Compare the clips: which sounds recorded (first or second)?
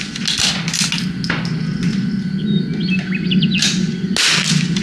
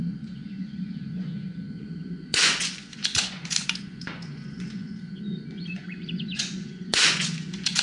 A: first